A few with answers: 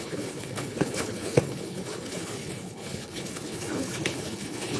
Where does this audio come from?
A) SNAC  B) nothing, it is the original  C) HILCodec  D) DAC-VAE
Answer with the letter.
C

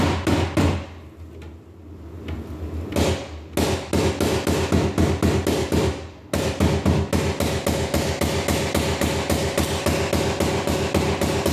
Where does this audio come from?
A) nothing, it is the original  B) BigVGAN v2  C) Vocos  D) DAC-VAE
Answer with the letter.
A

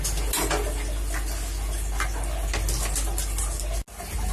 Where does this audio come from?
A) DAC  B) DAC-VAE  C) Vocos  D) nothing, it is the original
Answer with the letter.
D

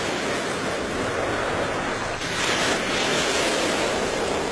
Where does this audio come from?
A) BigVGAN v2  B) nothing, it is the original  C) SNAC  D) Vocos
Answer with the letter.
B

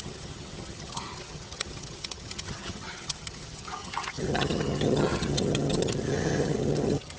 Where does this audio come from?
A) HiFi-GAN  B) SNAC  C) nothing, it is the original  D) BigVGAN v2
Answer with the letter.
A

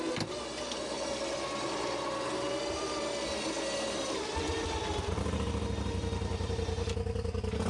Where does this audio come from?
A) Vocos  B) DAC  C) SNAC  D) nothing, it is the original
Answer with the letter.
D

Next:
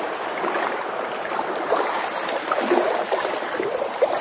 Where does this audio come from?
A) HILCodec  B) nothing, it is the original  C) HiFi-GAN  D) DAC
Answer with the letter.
B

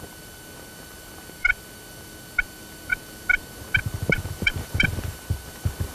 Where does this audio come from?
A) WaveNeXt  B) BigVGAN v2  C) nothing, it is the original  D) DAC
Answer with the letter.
B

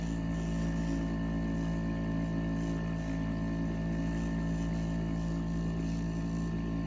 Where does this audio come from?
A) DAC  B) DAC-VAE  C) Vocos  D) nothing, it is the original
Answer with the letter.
D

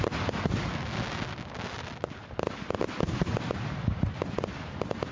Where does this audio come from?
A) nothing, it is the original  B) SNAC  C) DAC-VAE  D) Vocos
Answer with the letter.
A